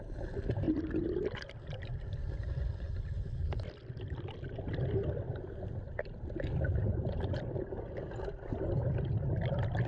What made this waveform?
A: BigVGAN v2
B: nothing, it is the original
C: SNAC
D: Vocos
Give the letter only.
B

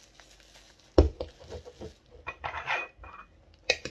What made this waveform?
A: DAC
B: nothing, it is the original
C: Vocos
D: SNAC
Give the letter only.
B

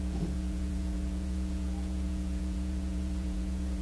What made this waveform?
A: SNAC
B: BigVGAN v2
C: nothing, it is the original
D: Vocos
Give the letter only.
D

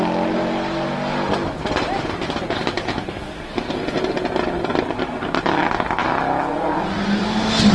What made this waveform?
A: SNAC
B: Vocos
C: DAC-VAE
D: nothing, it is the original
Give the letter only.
D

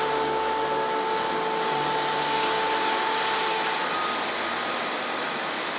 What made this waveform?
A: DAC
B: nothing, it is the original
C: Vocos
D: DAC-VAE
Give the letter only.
B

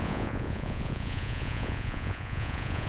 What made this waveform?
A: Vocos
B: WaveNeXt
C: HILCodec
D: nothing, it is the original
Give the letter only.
A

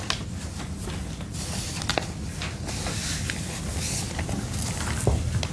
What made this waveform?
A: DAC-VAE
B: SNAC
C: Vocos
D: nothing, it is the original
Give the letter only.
D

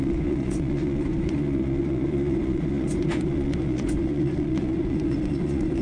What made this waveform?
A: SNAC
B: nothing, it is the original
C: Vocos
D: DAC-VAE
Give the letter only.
C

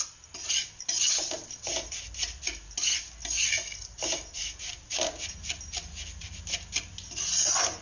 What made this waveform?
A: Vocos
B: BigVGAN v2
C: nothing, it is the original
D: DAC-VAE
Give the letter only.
C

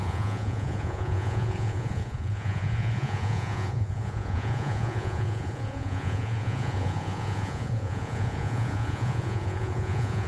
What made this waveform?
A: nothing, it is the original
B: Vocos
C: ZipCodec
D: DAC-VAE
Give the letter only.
B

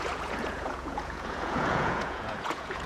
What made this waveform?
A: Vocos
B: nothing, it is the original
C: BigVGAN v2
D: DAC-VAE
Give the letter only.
A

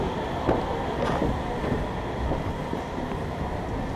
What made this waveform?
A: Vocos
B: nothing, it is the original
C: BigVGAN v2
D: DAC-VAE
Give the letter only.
B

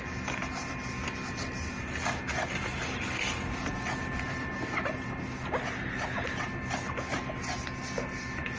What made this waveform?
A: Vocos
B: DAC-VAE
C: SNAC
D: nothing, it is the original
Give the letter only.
D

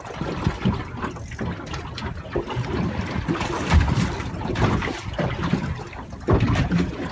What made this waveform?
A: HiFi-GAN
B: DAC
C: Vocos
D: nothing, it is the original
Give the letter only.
D